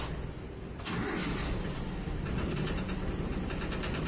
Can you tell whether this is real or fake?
real